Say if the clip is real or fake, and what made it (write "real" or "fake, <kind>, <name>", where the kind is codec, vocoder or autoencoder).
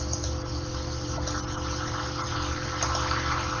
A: real